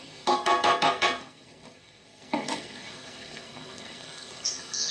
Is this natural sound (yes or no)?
no